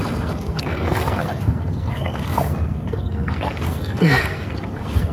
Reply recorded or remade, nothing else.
remade